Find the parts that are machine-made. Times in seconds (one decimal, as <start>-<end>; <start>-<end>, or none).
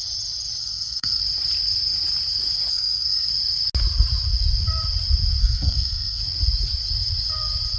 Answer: 0.6-1.2; 2.7-3.3; 5.4-6.2